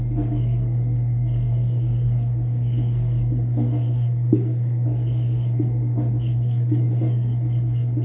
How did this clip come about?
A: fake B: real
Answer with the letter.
A